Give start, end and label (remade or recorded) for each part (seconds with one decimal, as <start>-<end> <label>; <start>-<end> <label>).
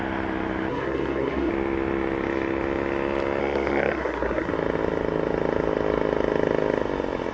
0.0-0.7 recorded; 0.7-1.5 remade; 1.5-3.4 recorded; 3.4-4.5 remade; 4.5-7.3 recorded